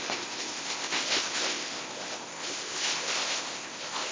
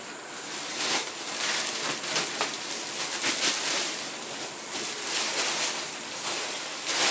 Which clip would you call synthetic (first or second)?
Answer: first